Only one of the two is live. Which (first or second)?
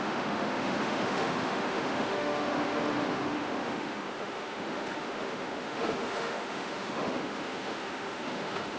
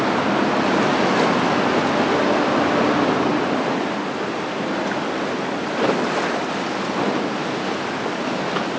second